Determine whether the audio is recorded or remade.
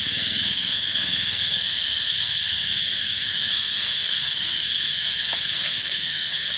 remade